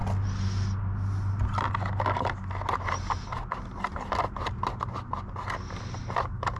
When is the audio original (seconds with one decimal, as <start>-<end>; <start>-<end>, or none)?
0.0-6.6